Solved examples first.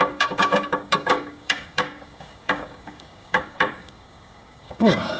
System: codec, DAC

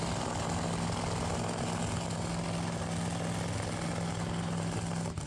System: none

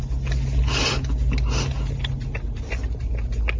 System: none